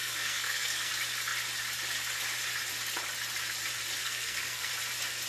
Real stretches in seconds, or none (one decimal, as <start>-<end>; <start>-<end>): 0.9-4.0; 4.7-5.3

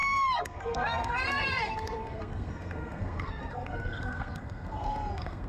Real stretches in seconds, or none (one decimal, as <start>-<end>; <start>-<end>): none

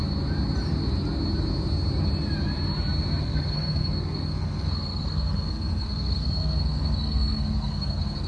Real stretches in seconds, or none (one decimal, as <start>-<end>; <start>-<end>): 0.0-3.2

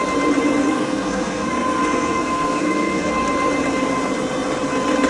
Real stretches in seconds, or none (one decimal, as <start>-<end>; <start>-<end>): 0.0-0.6; 3.1-5.1

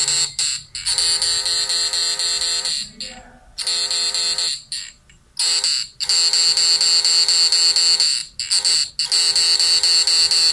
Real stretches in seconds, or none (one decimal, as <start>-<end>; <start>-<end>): 0.0-10.5

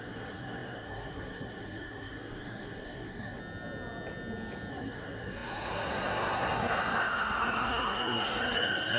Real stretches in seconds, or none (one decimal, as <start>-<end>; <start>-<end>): 3.4-4.7

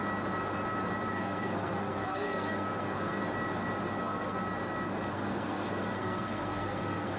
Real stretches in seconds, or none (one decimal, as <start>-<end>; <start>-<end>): 0.0-1.1; 3.2-4.0; 4.4-5.1

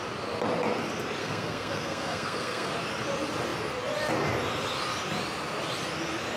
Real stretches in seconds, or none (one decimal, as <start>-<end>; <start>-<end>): 0.0-1.2; 2.7-6.4